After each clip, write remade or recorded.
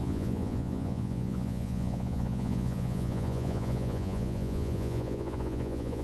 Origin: remade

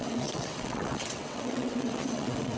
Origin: remade